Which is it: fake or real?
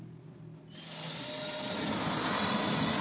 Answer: real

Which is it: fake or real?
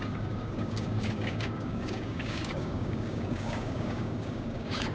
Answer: fake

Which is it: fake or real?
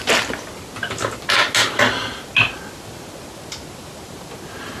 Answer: real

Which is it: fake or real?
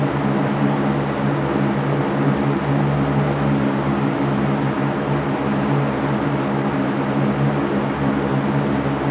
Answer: real